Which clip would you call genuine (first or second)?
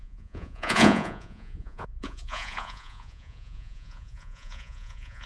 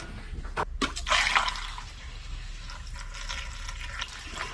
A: second